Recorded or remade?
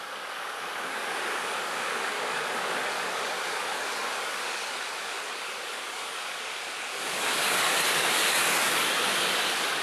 remade